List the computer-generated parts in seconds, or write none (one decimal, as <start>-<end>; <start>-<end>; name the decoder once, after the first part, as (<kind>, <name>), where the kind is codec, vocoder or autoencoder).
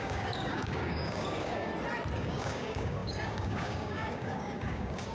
0.0-1.7 (codec, DAC); 2.2-5.1